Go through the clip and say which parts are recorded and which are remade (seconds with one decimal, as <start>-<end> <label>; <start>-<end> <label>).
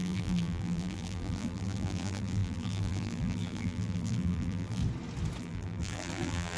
0.0-4.8 remade; 4.8-5.4 recorded; 5.4-6.6 remade